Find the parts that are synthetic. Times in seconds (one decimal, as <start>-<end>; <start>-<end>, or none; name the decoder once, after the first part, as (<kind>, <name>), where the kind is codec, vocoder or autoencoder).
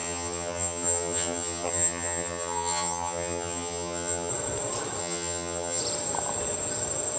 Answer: 0.0-4.3 (vocoder, HiFi-GAN); 5.0-5.8